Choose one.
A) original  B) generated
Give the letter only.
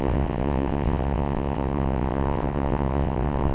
B